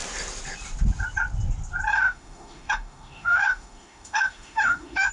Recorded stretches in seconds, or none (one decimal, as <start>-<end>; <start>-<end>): 0.0-1.9